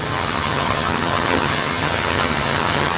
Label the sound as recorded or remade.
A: remade